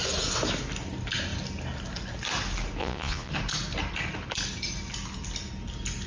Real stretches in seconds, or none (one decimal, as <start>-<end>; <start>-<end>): 0.0-2.8; 3.3-6.1